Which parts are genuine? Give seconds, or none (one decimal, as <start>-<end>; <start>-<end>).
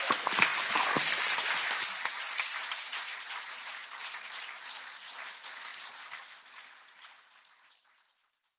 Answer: 0.0-8.6